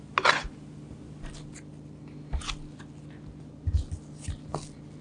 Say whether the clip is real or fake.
real